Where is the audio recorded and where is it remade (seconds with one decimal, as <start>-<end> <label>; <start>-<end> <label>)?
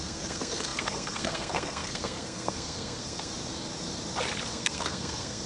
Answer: 0.0-3.3 remade; 3.3-4.5 recorded; 4.5-5.5 remade